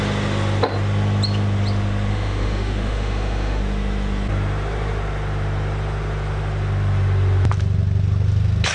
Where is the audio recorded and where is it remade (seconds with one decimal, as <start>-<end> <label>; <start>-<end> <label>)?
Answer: 0.0-2.1 recorded; 2.1-3.6 remade; 3.6-8.7 recorded